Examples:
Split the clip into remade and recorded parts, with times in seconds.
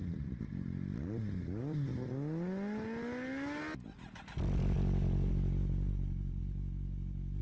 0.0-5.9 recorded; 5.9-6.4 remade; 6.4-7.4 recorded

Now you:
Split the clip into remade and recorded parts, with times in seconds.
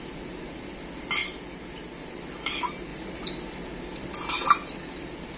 0.0-1.2 remade; 1.2-2.0 recorded; 2.0-5.4 remade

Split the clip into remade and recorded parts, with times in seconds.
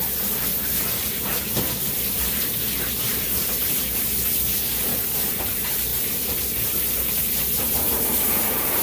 0.0-8.8 remade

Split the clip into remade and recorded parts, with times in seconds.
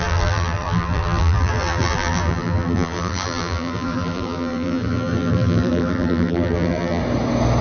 0.0-7.0 remade; 7.0-7.6 recorded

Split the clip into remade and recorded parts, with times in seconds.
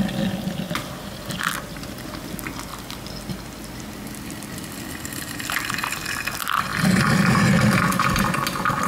0.0-8.9 recorded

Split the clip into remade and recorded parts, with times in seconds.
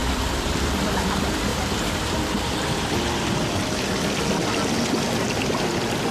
0.0-6.1 remade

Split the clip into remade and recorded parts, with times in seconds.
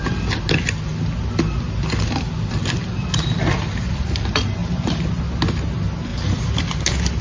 0.0-4.6 recorded; 4.6-5.2 remade; 5.2-6.1 recorded; 6.1-6.6 remade; 6.6-7.2 recorded